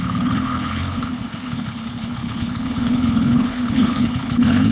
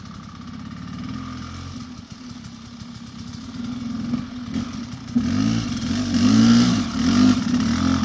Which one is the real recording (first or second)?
second